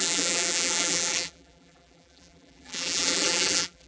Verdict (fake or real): fake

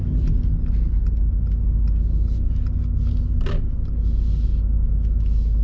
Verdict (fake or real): real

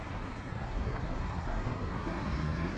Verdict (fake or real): fake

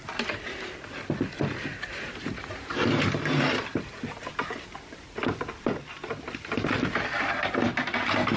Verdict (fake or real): real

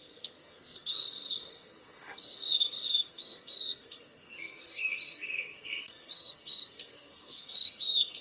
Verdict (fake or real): fake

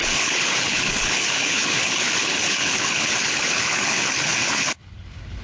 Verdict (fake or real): fake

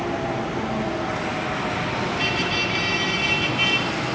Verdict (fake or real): real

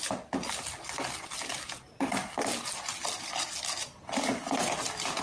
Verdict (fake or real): real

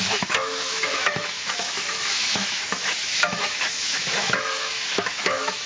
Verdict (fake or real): fake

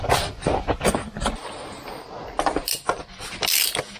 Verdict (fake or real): real